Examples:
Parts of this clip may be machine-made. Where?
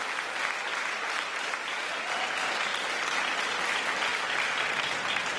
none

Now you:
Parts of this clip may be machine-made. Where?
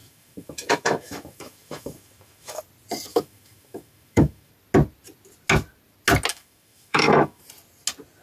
0.0-2.6 (autoencoder, DAC-VAE); 3.1-4.5; 6.3-7.4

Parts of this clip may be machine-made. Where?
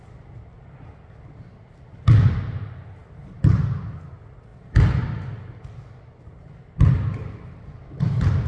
none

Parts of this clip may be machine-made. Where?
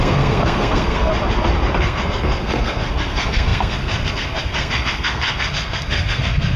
0.0-1.1 (codec, SNAC); 1.8-6.6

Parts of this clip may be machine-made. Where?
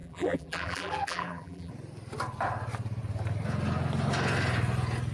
0.0-1.7 (vocoder, BigVGAN v2)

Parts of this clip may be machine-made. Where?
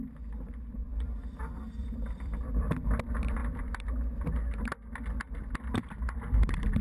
0.9-1.4 (vocoder, BigVGAN v2); 1.8-2.7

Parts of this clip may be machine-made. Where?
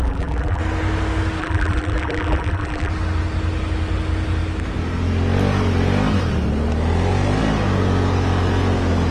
0.0-0.6 (vocoder, BigVGAN v2); 1.4-2.9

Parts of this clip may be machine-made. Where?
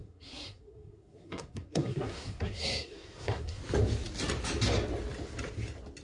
0.0-3.6 (codec, SNAC)